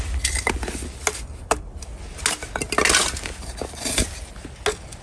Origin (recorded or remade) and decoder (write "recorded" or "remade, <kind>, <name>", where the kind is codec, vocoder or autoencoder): recorded